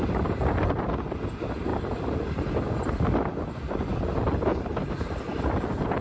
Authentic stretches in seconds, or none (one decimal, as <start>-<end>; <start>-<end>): 0.0-6.0